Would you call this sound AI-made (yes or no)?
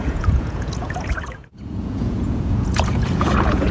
yes